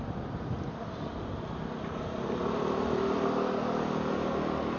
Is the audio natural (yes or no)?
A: yes